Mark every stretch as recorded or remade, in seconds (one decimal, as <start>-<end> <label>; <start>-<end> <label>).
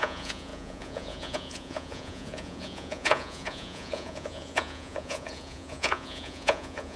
0.0-7.0 remade